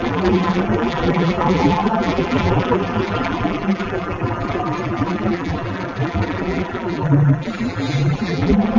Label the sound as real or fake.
fake